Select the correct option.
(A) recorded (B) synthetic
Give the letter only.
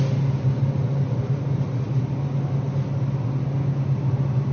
A